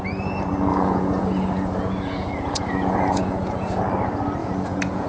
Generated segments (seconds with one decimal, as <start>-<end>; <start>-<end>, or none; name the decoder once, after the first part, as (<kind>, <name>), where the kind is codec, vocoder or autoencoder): 0.7-3.8 (vocoder, Vocos); 4.4-5.1